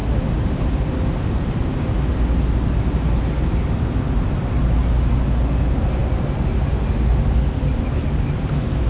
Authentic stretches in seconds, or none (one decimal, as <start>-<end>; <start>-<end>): 0.0-8.9